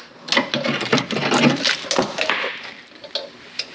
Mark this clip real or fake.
real